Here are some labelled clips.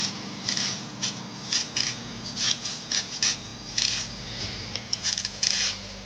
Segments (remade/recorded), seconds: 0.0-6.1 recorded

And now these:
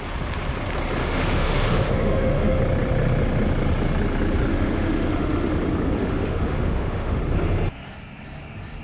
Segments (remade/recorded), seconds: 0.0-1.0 recorded; 1.0-2.6 remade; 2.6-4.5 recorded; 4.5-5.5 remade; 5.5-6.0 recorded; 6.0-7.2 remade; 7.2-8.8 recorded